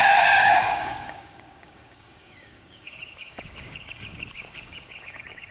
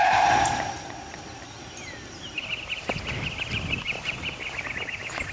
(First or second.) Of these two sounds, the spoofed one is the first